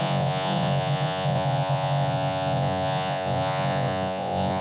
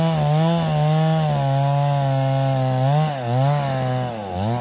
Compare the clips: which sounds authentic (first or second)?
second